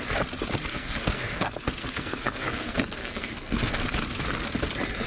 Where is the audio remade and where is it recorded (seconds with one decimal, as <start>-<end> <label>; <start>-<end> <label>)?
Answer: 0.0-0.7 recorded; 0.7-3.8 remade; 3.8-5.1 recorded